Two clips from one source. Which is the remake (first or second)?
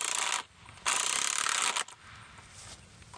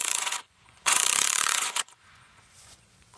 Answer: second